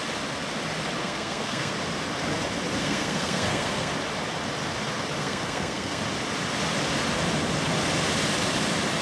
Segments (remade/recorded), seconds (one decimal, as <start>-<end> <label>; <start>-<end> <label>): 0.0-1.0 recorded; 1.0-1.7 remade; 1.7-2.8 recorded; 2.8-3.9 remade; 3.9-5.2 recorded; 5.2-6.0 remade; 6.0-9.0 recorded